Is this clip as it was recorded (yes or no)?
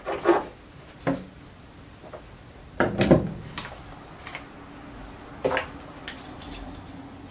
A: yes